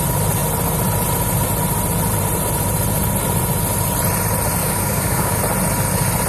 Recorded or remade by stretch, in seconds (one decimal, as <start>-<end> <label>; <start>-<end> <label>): 0.0-4.6 recorded; 4.6-5.4 remade; 5.4-6.3 recorded